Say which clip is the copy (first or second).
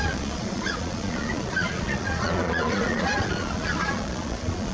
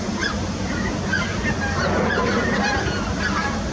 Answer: first